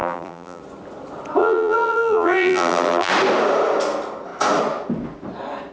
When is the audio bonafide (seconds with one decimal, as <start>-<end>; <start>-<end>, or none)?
0.6-1.4; 3.1-5.7